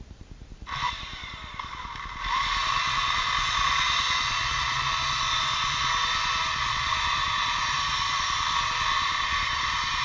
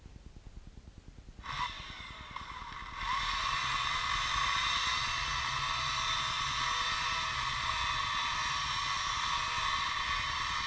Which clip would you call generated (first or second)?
first